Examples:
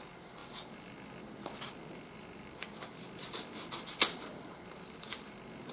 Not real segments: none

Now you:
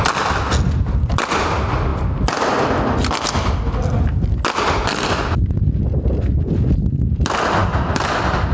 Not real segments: none